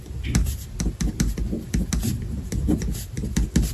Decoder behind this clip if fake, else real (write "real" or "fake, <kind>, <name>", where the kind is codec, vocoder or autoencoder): real